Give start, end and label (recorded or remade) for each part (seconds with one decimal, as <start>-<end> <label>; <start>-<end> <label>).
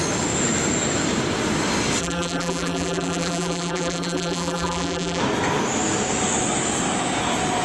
0.0-2.0 recorded; 2.0-5.2 remade; 5.2-7.6 recorded